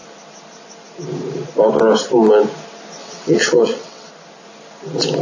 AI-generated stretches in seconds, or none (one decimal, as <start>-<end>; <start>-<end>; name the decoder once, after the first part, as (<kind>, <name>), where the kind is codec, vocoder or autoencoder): 3.0-4.1 (vocoder, WaveNeXt)